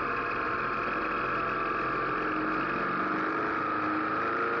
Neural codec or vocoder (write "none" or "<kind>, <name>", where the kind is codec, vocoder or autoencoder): none